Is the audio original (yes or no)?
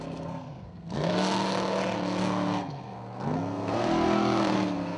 no